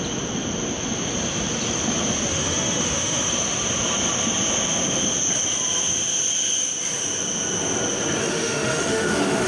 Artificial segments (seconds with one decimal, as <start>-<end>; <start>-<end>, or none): 2.3-3.3; 8.2-9.5